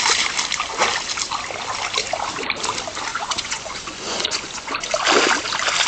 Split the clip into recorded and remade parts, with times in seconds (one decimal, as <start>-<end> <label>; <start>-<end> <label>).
0.0-3.1 recorded; 3.1-4.7 remade; 4.7-5.9 recorded